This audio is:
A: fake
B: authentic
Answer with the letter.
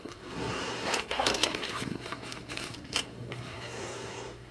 A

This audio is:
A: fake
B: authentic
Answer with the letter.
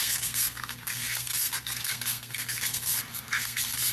A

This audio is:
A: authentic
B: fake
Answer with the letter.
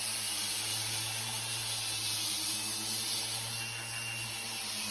A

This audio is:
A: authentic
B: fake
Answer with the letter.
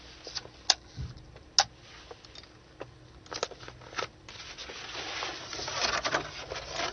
A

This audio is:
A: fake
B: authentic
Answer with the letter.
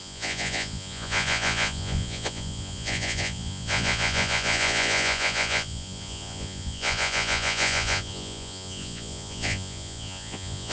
A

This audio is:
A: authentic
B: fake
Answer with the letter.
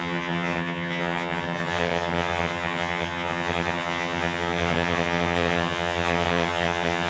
B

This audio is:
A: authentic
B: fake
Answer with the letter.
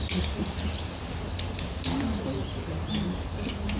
A